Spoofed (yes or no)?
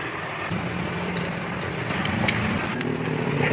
yes